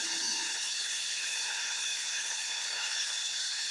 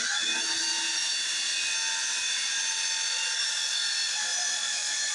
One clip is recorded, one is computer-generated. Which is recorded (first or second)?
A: second